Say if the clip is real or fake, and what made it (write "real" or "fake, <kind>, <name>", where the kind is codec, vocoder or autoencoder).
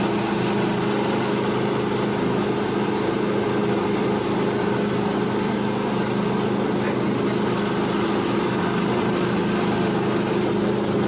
real